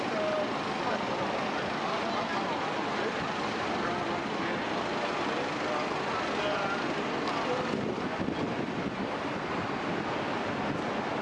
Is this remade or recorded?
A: recorded